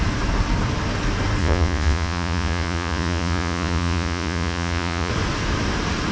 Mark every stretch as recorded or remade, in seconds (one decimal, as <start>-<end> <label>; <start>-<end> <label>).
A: 0.0-1.4 recorded; 1.4-5.1 remade; 5.1-6.1 recorded